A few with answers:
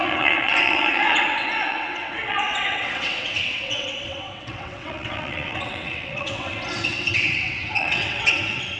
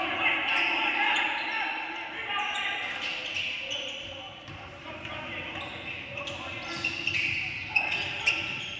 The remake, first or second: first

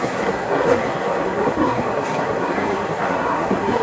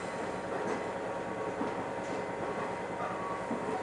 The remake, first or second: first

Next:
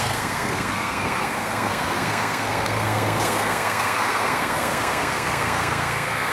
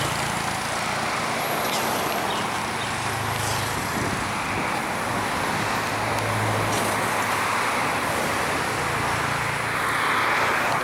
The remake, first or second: first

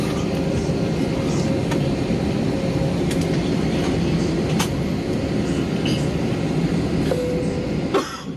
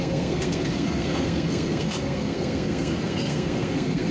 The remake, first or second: second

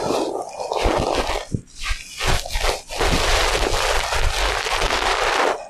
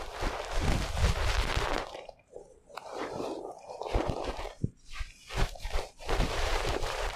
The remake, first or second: second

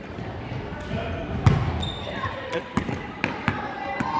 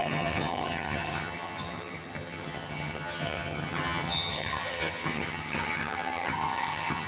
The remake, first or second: second